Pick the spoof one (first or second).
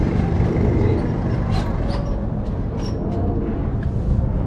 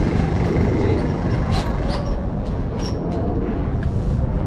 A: second